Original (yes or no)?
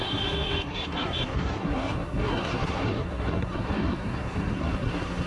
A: no